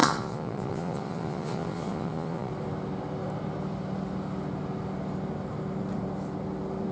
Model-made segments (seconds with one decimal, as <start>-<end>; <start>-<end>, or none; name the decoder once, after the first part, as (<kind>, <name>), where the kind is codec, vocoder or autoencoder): 0.0-2.5 (vocoder, Vocos)